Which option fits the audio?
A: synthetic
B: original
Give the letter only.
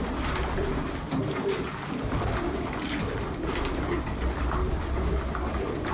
B